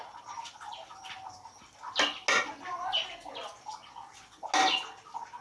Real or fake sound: real